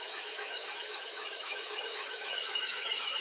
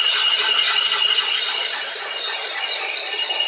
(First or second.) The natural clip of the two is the second